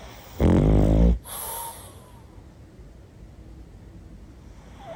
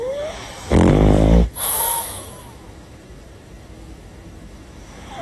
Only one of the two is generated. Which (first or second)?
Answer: second